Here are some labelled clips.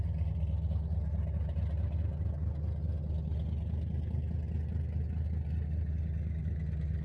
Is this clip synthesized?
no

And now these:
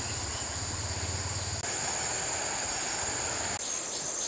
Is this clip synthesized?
no